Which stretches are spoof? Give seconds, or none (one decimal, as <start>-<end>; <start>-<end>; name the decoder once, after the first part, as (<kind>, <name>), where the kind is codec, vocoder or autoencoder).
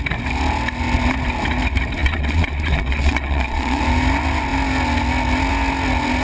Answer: 2.0-3.8 (vocoder, Vocos)